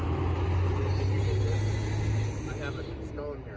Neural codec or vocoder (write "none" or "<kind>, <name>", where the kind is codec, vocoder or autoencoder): none